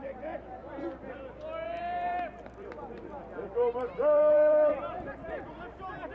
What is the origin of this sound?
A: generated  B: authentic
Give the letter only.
A